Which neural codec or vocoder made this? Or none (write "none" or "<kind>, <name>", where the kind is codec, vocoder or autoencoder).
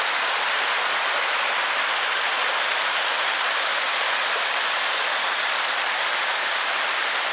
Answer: none